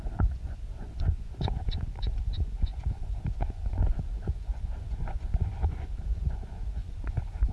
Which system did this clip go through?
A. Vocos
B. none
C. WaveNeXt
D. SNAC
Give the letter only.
A